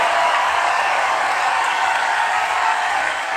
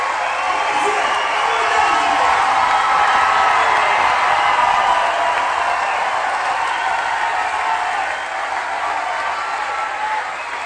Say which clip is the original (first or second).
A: second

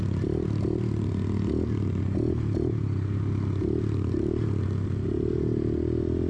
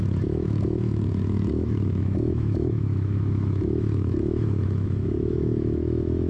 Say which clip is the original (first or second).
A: first